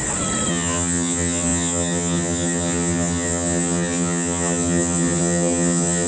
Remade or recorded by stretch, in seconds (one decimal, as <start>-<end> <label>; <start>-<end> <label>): 0.0-0.5 recorded; 0.5-6.1 remade